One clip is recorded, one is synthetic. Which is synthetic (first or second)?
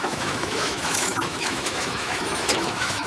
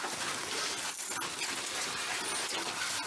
first